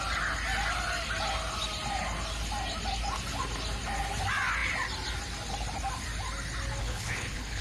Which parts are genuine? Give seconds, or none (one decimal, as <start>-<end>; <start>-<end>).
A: 0.0-6.8